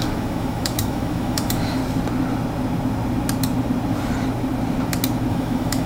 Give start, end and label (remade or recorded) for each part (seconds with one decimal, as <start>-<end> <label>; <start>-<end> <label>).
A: 0.0-1.8 remade; 1.8-5.3 recorded; 5.3-5.9 remade